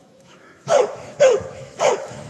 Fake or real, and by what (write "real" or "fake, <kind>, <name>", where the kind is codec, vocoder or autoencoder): fake, autoencoder, DAC-VAE